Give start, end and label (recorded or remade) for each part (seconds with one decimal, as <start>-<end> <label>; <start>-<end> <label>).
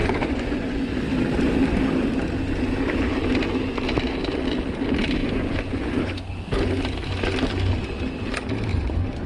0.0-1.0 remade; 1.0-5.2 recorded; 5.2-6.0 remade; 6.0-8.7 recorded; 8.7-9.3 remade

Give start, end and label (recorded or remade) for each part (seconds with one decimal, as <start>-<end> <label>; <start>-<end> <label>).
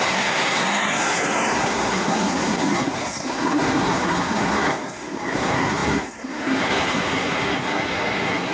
0.0-8.5 remade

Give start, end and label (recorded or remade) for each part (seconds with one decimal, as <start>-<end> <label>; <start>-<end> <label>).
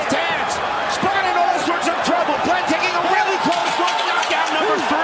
0.0-1.4 recorded; 1.4-2.4 remade; 2.4-3.6 recorded; 3.6-4.3 remade; 4.3-5.0 recorded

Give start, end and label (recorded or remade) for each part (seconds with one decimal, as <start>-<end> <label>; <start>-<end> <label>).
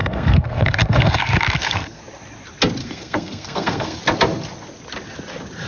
0.0-2.0 remade; 2.0-2.8 recorded; 2.8-4.0 remade; 4.0-5.7 recorded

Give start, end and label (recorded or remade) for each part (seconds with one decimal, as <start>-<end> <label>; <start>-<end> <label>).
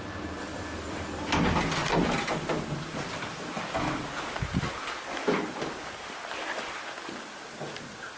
0.0-8.2 recorded